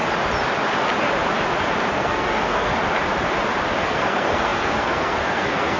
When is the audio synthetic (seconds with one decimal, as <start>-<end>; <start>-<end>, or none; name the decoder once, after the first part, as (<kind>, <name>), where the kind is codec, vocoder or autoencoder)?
1.9-2.7 (codec, SNAC); 3.8-5.8